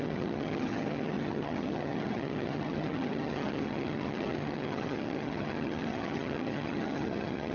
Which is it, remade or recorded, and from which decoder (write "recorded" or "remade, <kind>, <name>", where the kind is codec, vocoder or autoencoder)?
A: remade, vocoder, HiFi-GAN